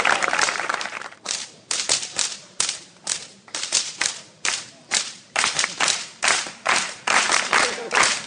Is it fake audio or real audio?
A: fake